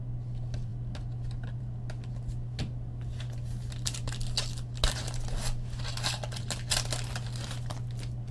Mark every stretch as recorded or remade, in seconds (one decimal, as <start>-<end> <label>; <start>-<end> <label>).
0.0-8.3 recorded